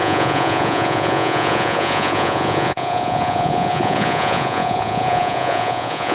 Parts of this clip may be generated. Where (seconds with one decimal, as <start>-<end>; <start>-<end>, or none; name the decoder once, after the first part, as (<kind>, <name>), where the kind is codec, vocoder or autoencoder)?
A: 0.0-6.1 (vocoder, Vocos)